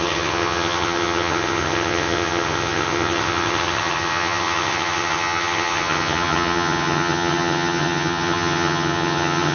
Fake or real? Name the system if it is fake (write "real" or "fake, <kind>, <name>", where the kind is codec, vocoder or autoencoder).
fake, vocoder, HiFi-GAN